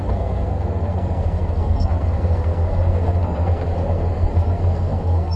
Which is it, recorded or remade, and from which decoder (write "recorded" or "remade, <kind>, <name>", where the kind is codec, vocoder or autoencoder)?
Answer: remade, codec, SNAC